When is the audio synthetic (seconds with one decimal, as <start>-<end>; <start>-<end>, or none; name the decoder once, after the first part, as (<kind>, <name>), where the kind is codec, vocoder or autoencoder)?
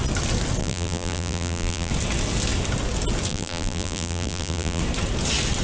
0.6-1.9 (vocoder, BigVGAN v2); 3.3-4.8